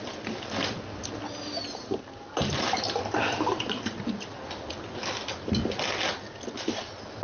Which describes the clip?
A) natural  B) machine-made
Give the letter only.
A